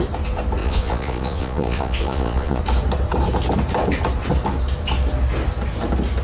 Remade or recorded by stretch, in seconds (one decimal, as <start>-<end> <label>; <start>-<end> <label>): 0.0-0.6 recorded; 0.6-2.6 remade; 2.6-6.2 recorded